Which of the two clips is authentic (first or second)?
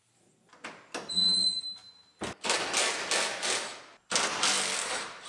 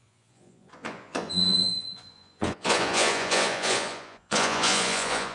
first